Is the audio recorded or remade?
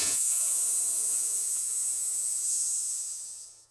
remade